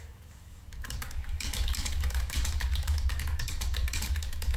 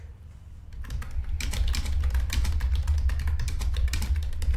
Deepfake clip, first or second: first